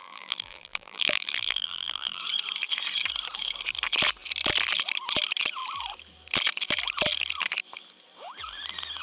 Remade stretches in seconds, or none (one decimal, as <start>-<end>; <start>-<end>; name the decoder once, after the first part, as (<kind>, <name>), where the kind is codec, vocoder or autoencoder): 0.0-2.2 (vocoder, BigVGAN v2)